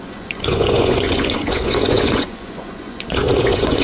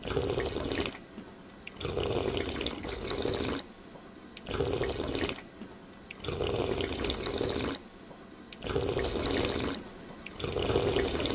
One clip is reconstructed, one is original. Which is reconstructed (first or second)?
first